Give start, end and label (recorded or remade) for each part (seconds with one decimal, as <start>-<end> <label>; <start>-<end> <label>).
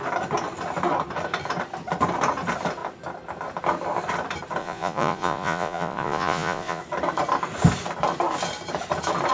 0.0-4.6 recorded; 4.6-6.8 remade; 6.8-9.3 recorded